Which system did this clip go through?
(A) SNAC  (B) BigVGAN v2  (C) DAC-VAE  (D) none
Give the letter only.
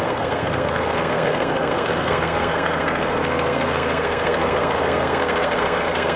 A